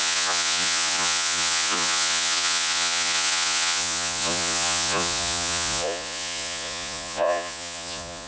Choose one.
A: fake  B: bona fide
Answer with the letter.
A